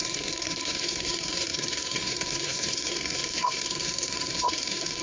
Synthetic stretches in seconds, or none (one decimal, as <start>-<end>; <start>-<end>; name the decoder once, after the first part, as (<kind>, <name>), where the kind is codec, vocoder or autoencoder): 0.0-5.0 (codec, SNAC)